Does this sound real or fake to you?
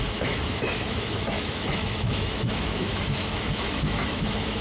fake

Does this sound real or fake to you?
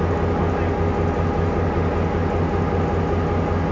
real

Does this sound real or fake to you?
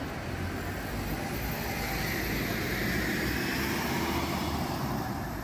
real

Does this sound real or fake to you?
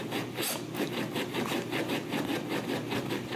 real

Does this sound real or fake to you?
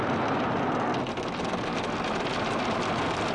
real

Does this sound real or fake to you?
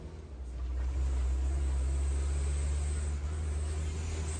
real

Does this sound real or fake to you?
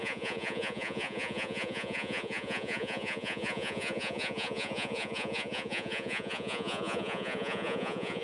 fake